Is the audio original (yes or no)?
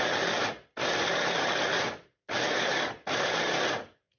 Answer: yes